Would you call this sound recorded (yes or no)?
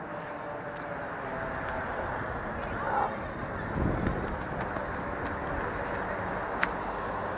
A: yes